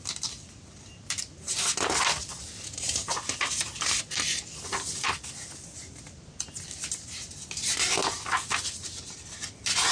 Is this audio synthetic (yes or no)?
no